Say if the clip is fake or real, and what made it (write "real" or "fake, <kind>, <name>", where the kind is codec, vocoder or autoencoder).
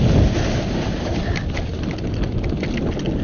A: real